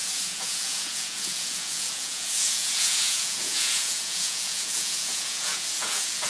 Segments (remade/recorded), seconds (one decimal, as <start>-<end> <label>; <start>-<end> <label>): 0.0-6.3 remade

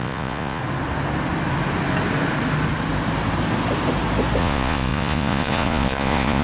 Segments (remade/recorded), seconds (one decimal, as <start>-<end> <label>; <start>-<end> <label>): 0.0-0.6 remade; 0.6-4.4 recorded; 4.4-6.4 remade

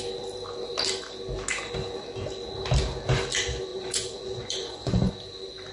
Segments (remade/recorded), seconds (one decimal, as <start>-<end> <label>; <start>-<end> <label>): 0.0-3.7 recorded; 3.7-5.1 remade; 5.1-5.7 recorded

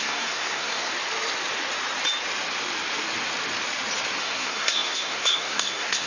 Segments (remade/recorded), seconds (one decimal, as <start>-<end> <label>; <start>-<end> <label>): 0.0-0.9 remade; 0.9-4.2 recorded; 4.2-6.1 remade

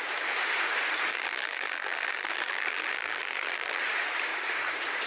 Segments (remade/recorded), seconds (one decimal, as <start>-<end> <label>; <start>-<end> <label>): 0.0-1.1 recorded; 1.1-3.8 remade; 3.8-5.1 recorded

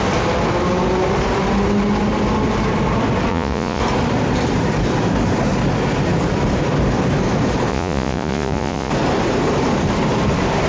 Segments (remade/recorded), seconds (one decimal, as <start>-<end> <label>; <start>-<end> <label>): 0.0-3.3 recorded; 3.3-3.8 remade; 3.8-7.7 recorded; 7.7-8.9 remade; 8.9-10.7 recorded

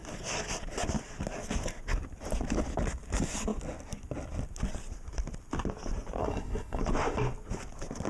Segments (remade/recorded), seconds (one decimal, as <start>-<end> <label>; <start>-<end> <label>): 0.0-6.2 recorded; 6.2-6.8 remade; 6.8-8.1 recorded

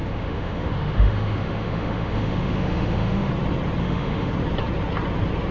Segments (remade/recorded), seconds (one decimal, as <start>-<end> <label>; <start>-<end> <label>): 0.0-3.3 remade; 3.3-3.8 recorded; 3.8-4.3 remade; 4.3-5.5 recorded